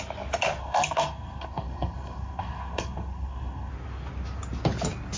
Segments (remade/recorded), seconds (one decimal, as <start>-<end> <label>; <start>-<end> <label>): 0.0-0.6 recorded; 0.6-3.7 remade; 3.7-5.2 recorded